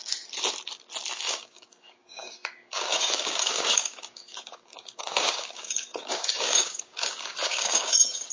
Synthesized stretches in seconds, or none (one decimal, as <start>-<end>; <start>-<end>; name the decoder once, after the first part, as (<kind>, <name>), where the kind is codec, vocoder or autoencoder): 1.2-8.3 (codec, DAC)